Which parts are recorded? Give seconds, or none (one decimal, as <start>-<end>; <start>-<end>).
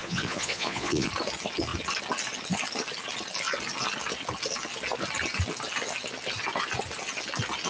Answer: 1.1-7.7